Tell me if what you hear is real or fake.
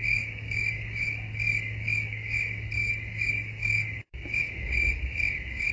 fake